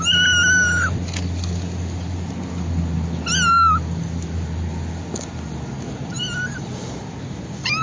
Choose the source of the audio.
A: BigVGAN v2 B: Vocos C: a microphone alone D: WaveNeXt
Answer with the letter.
C